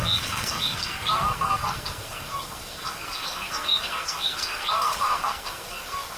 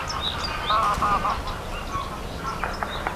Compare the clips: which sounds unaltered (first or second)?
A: second